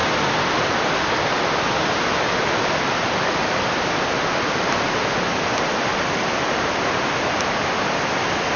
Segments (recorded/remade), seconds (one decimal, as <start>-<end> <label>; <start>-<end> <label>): 0.0-8.6 recorded